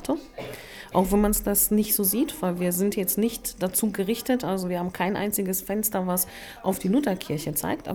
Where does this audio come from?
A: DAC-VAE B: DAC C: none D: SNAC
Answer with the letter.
C